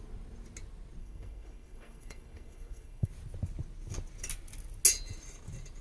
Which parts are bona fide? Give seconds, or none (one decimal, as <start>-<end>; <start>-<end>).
0.0-1.0; 3.1-5.8